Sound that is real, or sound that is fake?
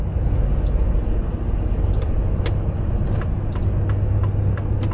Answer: real